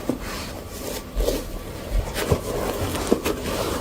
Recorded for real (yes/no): yes